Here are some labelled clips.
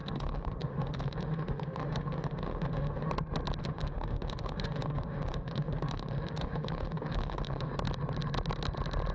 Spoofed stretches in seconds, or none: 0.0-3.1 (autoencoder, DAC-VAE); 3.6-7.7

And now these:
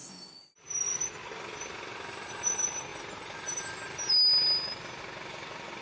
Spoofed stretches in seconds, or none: none

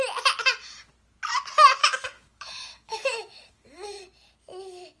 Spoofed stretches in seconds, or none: 1.8-4.0 (autoencoder, DAC-VAE)

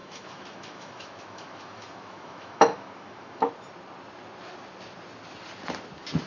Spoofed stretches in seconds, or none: 0.0-3.5 (autoencoder, DAC-VAE)

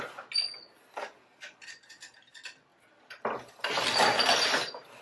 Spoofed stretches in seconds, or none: none

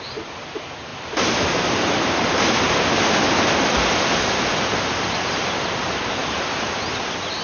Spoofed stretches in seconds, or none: none

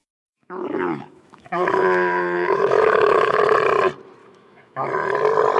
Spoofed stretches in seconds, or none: 0.0-3.4 (autoencoder, DAC-VAE); 4.2-4.9